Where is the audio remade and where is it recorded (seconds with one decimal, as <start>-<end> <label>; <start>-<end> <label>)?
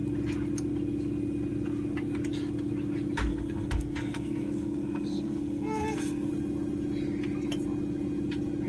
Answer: 0.0-3.3 recorded; 3.3-6.3 remade; 6.3-8.7 recorded